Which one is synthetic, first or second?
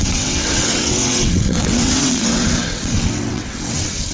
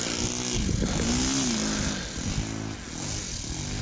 first